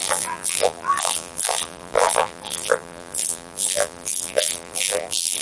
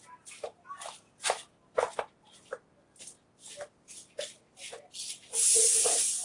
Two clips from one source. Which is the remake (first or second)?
first